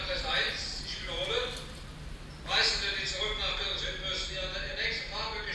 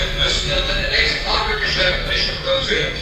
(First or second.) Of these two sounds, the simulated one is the second